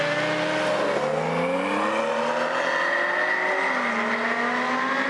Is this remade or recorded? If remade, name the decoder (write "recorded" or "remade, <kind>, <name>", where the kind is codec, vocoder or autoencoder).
recorded